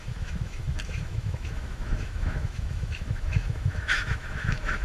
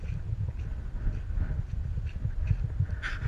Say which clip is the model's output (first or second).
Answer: first